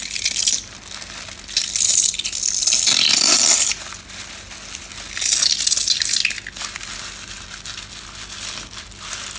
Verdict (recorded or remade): recorded